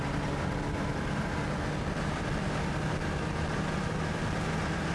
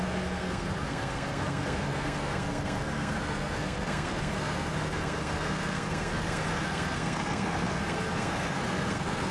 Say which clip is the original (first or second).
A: first